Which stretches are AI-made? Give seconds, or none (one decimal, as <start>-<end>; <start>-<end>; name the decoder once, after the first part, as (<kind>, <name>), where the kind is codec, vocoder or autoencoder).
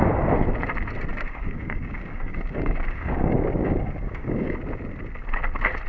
1.1-4.6 (codec, DAC)